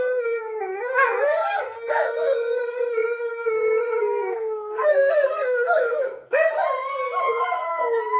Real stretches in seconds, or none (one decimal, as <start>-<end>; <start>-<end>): 6.4-7.2